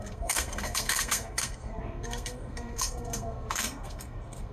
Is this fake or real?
fake